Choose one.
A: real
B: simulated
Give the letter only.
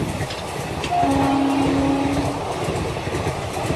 A